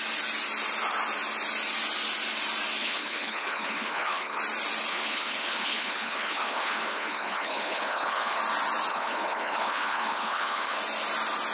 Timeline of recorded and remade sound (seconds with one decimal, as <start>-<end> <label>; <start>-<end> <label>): 0.0-2.8 recorded; 2.8-4.4 remade; 4.4-4.9 recorded; 4.9-8.4 remade; 8.4-8.9 recorded; 8.9-10.8 remade; 10.8-11.5 recorded